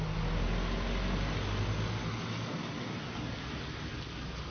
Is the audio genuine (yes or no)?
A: yes